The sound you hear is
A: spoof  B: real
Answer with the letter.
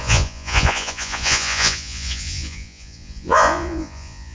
A